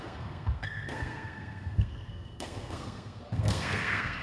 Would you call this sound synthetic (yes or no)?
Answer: yes